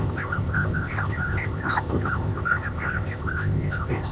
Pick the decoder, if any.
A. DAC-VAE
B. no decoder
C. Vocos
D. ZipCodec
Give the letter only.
D